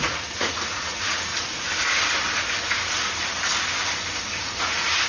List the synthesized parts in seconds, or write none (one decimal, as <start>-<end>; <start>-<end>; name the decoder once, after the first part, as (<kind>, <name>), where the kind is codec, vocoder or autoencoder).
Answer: 0.0-1.3 (vocoder, Vocos); 4.4-5.1